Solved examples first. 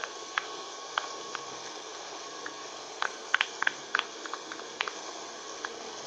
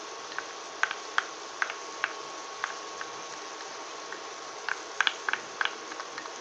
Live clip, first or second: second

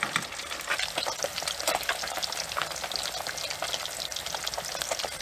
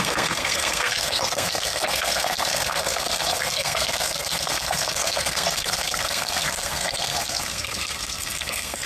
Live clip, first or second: first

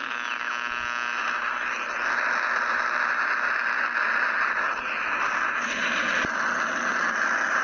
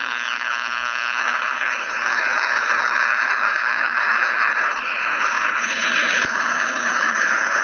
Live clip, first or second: first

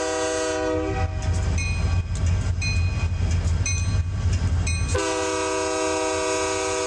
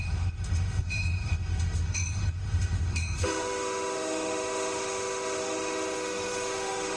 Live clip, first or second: first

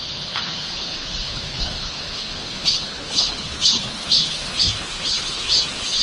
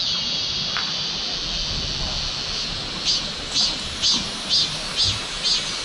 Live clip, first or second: second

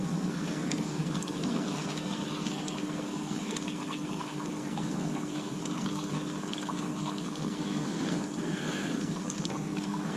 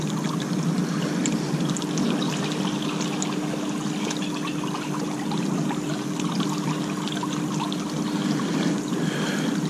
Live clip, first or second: second